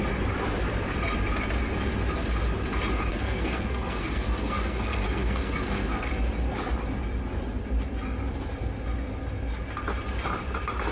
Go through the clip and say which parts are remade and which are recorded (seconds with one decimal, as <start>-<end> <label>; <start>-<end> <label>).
0.0-3.1 recorded; 3.1-6.1 remade; 6.1-10.9 recorded